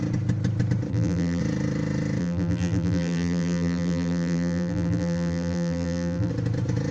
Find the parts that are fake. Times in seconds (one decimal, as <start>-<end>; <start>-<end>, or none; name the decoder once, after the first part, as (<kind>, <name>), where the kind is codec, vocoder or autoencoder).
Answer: 0.9-1.4 (vocoder, BigVGAN v2); 2.2-6.3